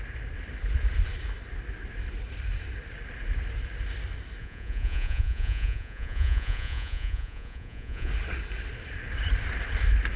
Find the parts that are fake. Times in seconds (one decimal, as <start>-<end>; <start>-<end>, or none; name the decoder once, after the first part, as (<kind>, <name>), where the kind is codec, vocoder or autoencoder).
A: 4.4-8.1 (vocoder, Vocos)